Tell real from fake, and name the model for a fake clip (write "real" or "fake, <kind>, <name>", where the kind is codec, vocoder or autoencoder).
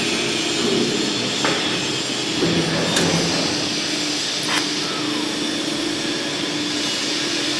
real